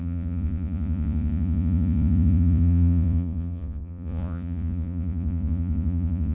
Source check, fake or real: fake